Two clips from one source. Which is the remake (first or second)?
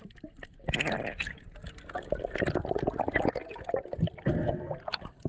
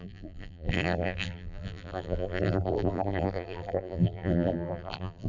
second